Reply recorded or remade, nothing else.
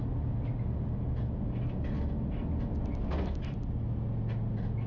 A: recorded